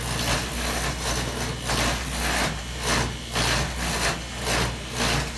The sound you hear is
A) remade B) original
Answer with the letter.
B